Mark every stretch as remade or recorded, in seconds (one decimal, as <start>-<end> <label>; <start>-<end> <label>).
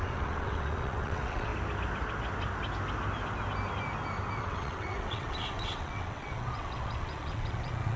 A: 0.0-1.5 remade; 1.5-4.4 recorded; 4.4-8.0 remade